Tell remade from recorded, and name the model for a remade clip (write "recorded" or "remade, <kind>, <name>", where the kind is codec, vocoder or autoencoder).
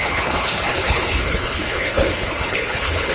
remade, codec, HILCodec